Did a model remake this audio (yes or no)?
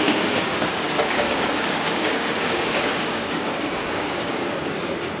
yes